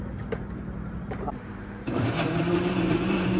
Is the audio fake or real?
fake